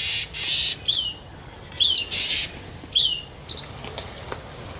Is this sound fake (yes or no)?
no